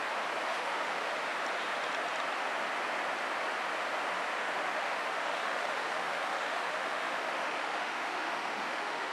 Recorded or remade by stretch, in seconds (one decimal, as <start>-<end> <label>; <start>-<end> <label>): 0.0-0.5 recorded; 0.5-1.1 remade; 1.1-4.4 recorded; 4.4-9.1 remade